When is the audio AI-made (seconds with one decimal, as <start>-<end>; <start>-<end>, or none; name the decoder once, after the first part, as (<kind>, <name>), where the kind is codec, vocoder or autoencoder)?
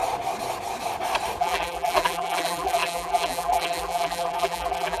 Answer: 1.4-5.0 (vocoder, BigVGAN v2)